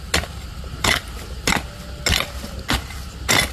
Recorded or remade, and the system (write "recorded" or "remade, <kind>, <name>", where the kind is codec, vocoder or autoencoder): recorded